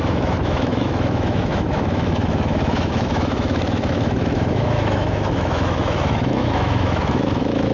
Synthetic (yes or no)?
yes